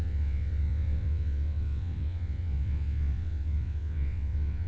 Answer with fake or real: fake